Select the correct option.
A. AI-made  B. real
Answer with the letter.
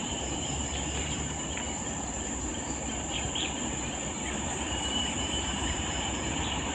A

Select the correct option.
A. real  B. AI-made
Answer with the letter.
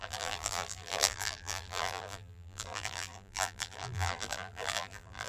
B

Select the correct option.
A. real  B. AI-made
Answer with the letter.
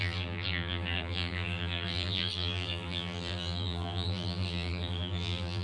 B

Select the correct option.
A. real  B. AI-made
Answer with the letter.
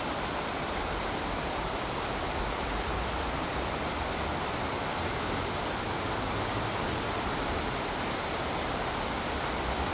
B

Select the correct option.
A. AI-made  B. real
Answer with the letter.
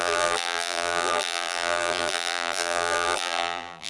A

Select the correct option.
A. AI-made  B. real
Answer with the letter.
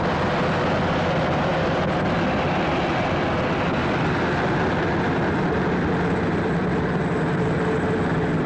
B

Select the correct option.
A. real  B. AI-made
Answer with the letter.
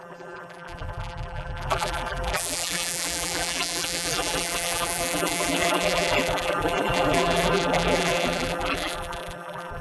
B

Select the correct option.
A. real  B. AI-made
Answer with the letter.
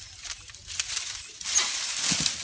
A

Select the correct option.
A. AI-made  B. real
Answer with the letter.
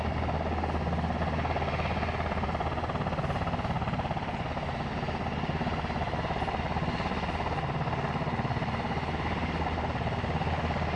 B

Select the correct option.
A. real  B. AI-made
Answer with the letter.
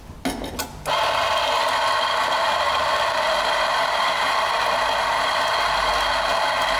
A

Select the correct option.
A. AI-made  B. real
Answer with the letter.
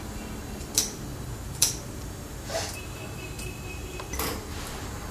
A